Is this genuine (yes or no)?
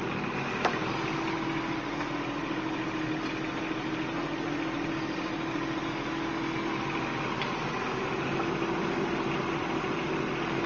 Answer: yes